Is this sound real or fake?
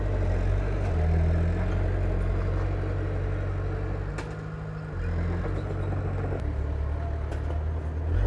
real